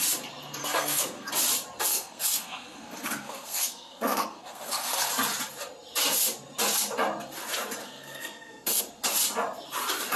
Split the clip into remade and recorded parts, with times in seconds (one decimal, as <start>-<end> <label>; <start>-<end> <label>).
0.0-0.6 recorded; 0.6-1.3 remade; 1.3-1.9 recorded; 1.9-5.1 remade; 5.1-7.8 recorded; 7.8-8.8 remade; 8.8-10.2 recorded